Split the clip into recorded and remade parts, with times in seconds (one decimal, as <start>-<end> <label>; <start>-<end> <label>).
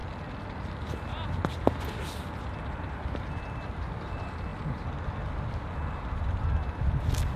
0.0-2.8 recorded; 2.8-4.5 remade; 4.5-6.0 recorded; 6.0-7.4 remade